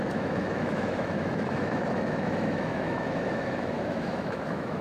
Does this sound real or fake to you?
fake